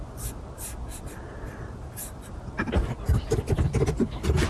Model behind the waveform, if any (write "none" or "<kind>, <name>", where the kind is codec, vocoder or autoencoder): vocoder, BigVGAN v2